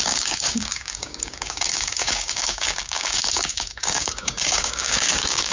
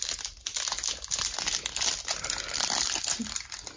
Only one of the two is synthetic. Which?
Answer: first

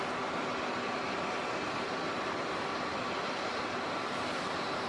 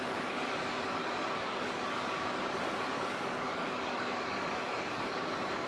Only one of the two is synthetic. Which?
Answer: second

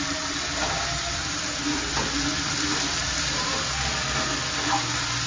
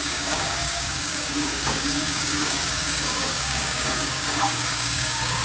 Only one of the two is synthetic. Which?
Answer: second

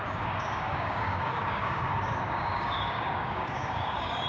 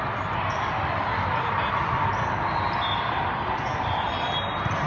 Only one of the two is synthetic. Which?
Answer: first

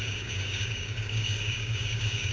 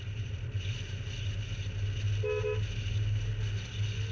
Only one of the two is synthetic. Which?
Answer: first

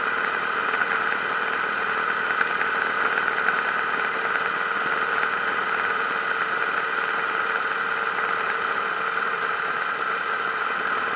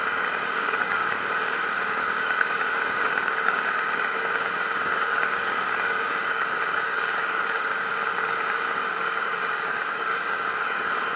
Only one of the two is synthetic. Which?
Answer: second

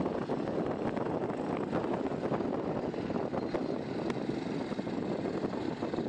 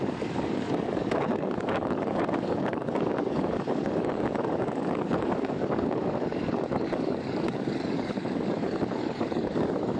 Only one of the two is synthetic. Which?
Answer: second